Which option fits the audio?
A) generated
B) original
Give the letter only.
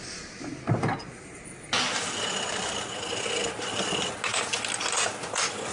B